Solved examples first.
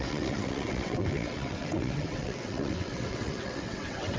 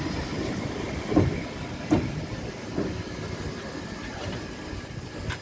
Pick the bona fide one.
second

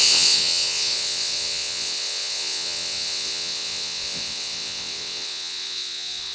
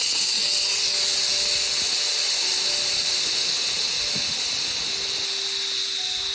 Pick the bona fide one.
second